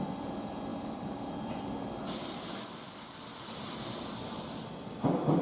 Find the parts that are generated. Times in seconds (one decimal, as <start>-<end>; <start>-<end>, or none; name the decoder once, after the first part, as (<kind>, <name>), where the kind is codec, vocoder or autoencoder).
0.0-5.4 (vocoder, BigVGAN v2)